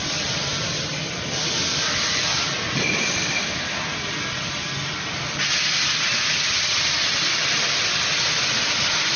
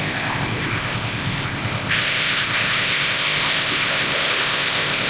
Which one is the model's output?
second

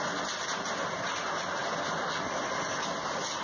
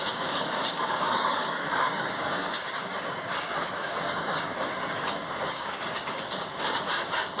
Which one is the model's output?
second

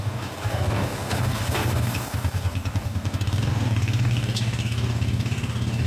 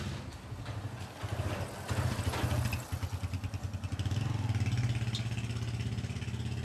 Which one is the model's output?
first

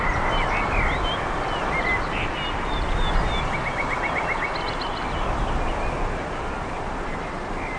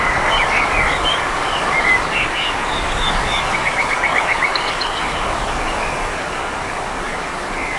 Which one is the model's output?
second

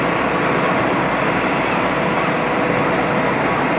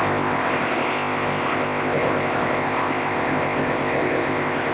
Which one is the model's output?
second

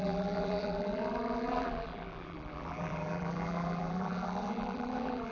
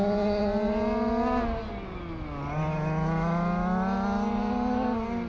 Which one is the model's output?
first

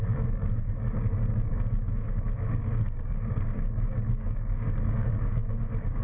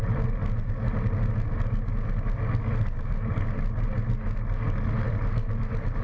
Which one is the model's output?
first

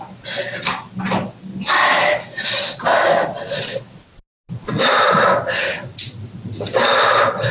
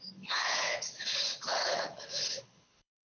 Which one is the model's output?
second